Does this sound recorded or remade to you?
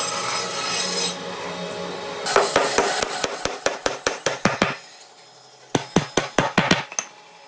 recorded